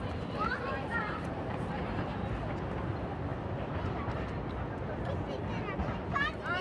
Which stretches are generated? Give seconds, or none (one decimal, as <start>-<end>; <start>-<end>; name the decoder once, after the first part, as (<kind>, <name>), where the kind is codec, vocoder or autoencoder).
0.9-1.7 (vocoder, BigVGAN v2)